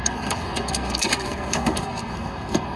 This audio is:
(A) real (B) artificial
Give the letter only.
B